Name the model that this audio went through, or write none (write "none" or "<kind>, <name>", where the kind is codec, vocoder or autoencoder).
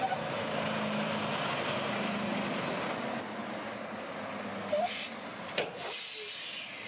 none